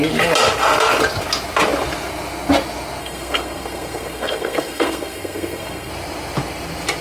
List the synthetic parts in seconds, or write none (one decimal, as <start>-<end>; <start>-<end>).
3.0-5.9